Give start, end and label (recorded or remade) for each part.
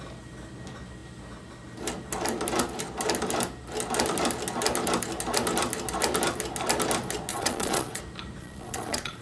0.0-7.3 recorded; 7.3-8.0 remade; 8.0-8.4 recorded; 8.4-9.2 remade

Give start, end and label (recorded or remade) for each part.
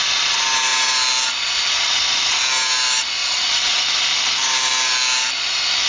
0.0-3.2 recorded; 3.2-3.8 remade; 3.8-5.9 recorded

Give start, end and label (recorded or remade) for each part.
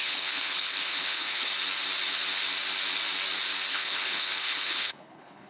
0.0-1.5 remade; 1.5-3.7 recorded; 3.7-5.5 remade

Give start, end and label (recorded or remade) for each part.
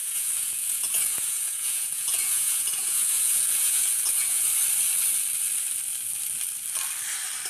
0.0-4.5 remade; 4.5-7.5 recorded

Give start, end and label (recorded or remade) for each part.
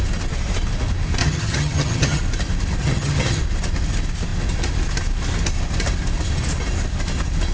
0.0-1.2 recorded; 1.2-2.2 remade; 2.2-2.8 recorded; 2.8-3.4 remade; 3.4-7.5 recorded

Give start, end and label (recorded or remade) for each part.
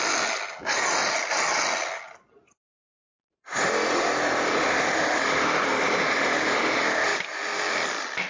0.0-7.1 recorded; 7.1-7.6 remade; 7.6-8.3 recorded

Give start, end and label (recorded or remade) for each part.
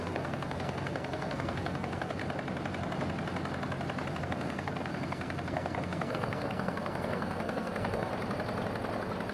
0.0-2.2 remade; 2.2-4.2 recorded; 4.2-8.1 remade; 8.1-9.3 recorded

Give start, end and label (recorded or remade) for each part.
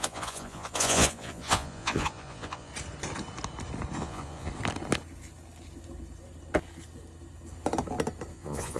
0.0-2.7 remade; 2.7-4.0 recorded; 4.0-4.5 remade; 4.5-8.3 recorded; 8.3-8.8 remade